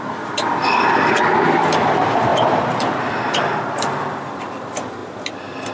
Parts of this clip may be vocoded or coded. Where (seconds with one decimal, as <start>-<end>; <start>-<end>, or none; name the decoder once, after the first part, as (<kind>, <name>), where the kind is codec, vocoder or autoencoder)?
0.0-5.0 (vocoder, BigVGAN v2)